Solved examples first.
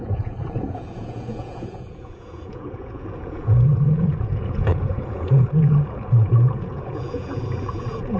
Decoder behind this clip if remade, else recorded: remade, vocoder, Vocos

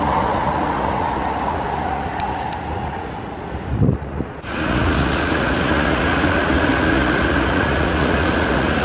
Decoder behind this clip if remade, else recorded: remade, vocoder, Vocos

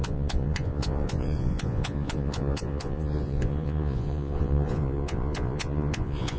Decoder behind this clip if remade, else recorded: remade, vocoder, Vocos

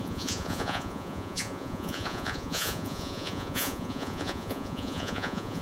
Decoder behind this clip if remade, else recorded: remade, vocoder, Vocos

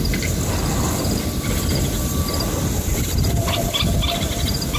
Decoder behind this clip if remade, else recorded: recorded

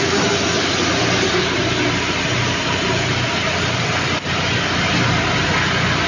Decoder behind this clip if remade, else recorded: recorded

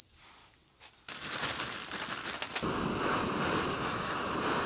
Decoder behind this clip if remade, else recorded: recorded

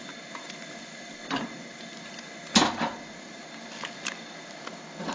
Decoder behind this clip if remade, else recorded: recorded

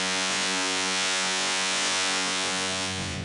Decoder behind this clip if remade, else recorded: remade, vocoder, Vocos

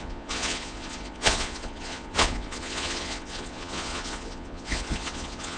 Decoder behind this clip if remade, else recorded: remade, vocoder, Vocos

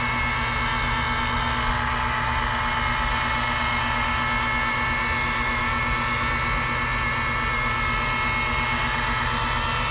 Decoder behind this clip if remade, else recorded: recorded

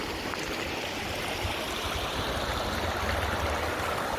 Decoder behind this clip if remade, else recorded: recorded